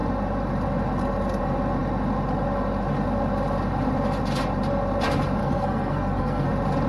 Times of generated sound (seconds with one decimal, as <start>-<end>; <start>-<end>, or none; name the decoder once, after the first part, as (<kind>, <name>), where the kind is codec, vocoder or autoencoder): 5.4-6.5 (codec, SNAC)